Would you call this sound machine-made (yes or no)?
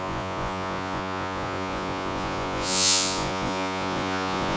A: yes